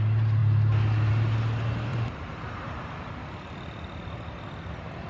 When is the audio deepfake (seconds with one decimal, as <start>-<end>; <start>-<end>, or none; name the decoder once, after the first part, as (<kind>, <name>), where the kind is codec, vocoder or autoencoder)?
1.9-3.2 (vocoder, BigVGAN v2)